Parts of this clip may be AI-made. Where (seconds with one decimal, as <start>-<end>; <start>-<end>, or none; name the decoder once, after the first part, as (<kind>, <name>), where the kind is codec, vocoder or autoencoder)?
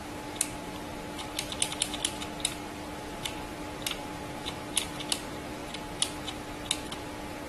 none